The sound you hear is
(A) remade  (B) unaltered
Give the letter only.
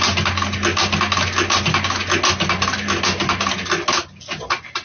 B